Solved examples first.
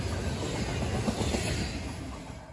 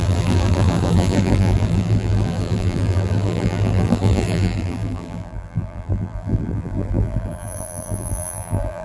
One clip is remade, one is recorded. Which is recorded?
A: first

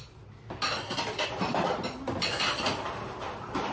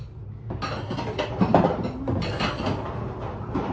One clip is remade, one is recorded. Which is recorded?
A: second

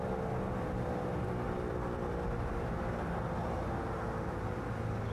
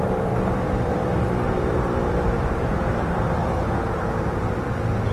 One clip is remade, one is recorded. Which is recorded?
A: first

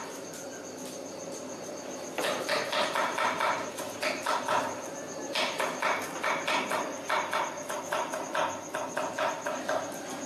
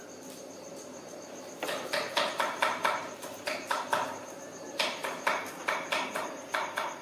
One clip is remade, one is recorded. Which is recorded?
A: first